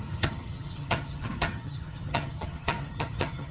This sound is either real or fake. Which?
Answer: fake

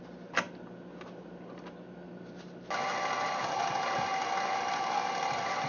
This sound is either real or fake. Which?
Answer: real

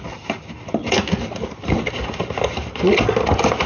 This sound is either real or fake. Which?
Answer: real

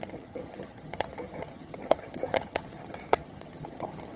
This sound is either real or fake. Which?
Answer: fake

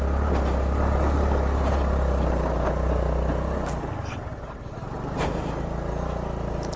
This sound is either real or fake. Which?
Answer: real